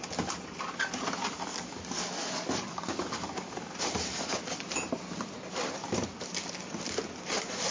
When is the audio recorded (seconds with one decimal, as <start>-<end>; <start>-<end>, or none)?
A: 0.0-1.5; 3.5-4.1; 4.7-7.7